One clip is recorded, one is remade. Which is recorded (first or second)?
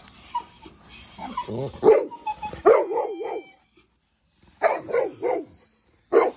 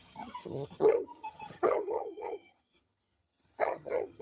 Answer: first